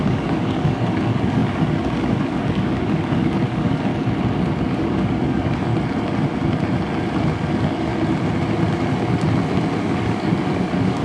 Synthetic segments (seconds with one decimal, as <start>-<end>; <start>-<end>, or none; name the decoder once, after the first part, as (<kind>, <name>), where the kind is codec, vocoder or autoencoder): 0.0-3.9 (codec, DAC); 4.6-5.7; 7.5-7.9; 9.8-11.0

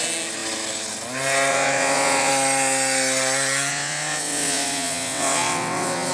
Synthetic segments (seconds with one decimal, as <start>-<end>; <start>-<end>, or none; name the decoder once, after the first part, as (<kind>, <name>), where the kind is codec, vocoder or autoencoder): 1.5-2.3 (vocoder, WaveNeXt); 3.7-6.1

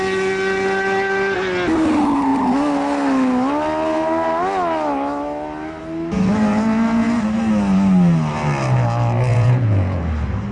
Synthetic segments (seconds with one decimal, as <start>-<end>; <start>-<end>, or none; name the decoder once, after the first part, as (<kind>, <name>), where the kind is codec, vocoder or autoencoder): 9.3-10.0 (vocoder, Vocos)

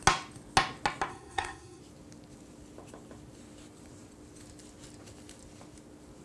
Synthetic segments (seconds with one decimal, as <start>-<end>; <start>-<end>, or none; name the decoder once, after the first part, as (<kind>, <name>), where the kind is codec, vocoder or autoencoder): 1.1-1.8 (codec, SNAC)

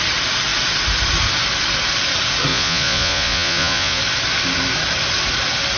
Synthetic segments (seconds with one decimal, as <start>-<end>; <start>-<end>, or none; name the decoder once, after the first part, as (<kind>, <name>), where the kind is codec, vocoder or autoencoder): 2.5-4.0 (vocoder, Vocos)

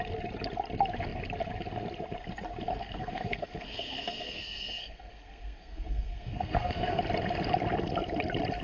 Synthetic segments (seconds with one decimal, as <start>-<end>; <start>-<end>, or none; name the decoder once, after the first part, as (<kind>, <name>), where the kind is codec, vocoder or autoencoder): 2.7-7.0 (codec, SNAC)

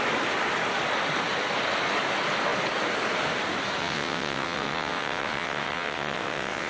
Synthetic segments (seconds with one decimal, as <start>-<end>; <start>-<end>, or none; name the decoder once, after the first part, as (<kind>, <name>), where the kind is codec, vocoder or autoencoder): 3.8-6.7 (vocoder, WaveNeXt)

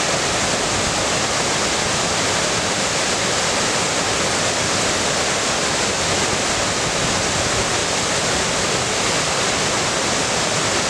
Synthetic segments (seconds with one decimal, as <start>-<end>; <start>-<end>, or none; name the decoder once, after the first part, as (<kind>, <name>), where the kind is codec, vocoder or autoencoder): none